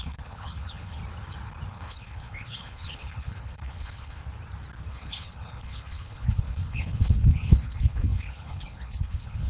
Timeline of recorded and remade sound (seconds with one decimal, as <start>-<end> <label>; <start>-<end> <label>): 0.0-1.0 remade; 1.0-1.7 recorded; 1.7-4.2 remade; 4.2-4.9 recorded; 4.9-9.5 remade